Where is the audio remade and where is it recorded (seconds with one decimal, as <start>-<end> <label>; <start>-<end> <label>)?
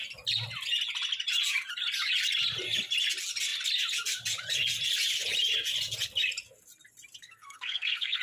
0.0-7.2 recorded; 7.2-8.2 remade